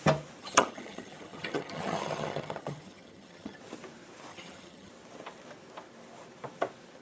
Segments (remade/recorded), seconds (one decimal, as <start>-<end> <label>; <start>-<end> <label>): 0.0-0.4 recorded; 0.4-3.6 remade; 3.6-4.3 recorded; 4.3-4.9 remade; 4.9-7.0 recorded